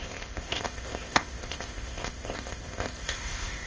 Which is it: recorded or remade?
remade